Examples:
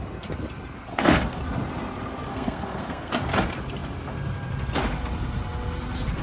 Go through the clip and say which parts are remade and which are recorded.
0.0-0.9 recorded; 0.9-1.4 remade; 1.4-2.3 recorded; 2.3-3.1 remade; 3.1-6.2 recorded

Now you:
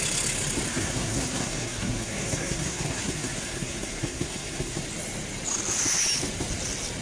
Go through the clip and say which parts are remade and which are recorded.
0.0-0.7 recorded; 0.7-4.8 remade; 4.8-7.0 recorded